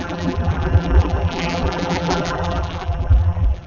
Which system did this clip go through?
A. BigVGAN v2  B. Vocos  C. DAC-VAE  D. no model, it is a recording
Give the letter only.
A